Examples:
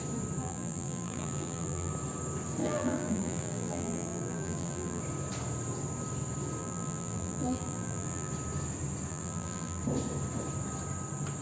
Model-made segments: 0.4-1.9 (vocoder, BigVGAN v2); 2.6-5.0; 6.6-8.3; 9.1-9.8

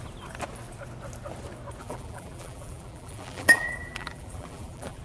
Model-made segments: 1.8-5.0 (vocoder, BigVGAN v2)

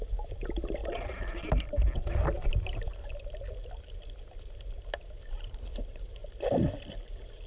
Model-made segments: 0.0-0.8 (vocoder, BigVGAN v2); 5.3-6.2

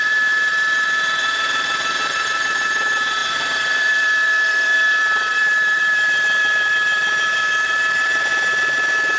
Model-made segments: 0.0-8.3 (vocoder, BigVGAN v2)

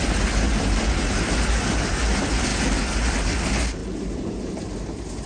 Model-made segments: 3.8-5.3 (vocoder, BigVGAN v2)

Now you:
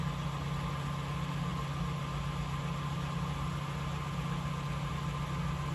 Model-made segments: none

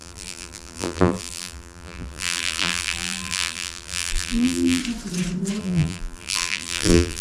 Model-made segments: 0.0-4.8 (vocoder, BigVGAN v2); 5.6-7.2